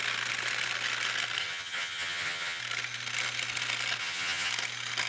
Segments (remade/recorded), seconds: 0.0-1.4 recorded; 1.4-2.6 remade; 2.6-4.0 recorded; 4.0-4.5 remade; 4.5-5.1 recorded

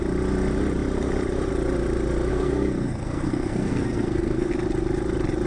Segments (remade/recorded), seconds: 0.0-2.3 recorded; 2.3-4.5 remade; 4.5-5.5 recorded

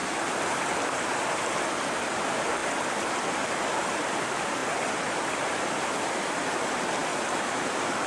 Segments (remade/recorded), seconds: 0.0-1.3 remade; 1.3-2.6 recorded; 2.6-3.3 remade; 3.3-7.0 recorded; 7.0-8.1 remade

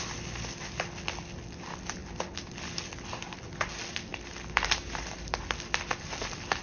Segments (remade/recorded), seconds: 0.0-4.1 recorded; 4.1-5.4 remade; 5.4-6.6 recorded

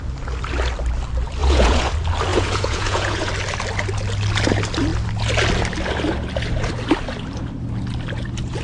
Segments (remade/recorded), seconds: 0.0-1.4 recorded; 1.4-1.9 remade; 1.9-2.3 recorded; 2.3-3.3 remade; 3.3-8.6 recorded

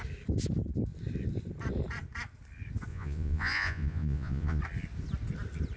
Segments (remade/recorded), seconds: 0.0-2.9 recorded; 2.9-4.6 remade; 4.6-5.8 recorded